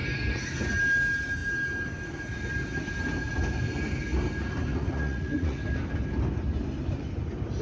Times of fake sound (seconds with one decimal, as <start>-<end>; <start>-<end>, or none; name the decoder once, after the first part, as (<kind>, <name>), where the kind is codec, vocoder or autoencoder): 4.7-5.6 (vocoder, Vocos)